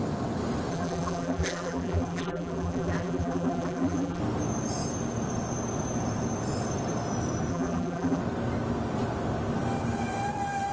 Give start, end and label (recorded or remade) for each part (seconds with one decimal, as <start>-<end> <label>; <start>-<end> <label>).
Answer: 0.0-0.7 recorded; 0.7-4.2 remade; 4.2-7.5 recorded; 7.5-8.2 remade; 8.2-10.7 recorded